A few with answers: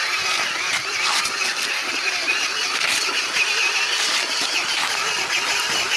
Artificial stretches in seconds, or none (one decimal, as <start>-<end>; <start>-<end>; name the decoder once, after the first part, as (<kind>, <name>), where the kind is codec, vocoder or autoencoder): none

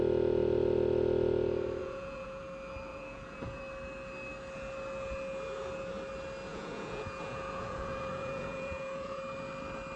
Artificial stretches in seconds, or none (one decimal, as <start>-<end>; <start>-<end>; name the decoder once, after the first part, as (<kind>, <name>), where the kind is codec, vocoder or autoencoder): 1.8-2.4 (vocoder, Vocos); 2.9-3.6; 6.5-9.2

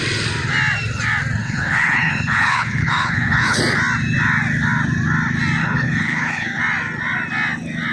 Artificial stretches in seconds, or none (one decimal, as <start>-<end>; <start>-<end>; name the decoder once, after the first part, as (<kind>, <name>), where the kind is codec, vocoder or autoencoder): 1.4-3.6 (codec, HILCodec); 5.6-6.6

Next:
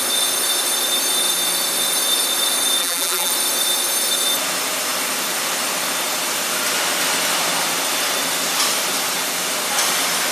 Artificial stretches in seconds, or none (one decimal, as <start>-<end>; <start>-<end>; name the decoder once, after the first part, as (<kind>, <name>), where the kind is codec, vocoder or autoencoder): 2.8-3.3 (vocoder, BigVGAN v2)

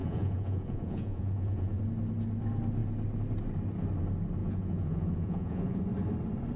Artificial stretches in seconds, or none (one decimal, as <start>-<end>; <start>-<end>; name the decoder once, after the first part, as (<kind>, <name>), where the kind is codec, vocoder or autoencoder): 0.0-1.8 (vocoder, Vocos); 4.4-5.8